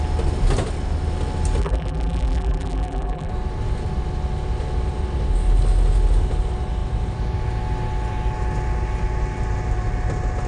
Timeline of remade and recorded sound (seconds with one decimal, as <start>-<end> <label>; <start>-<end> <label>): 0.0-1.6 recorded; 1.6-3.3 remade; 3.3-10.5 recorded